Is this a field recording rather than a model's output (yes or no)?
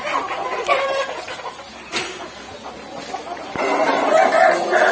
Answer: yes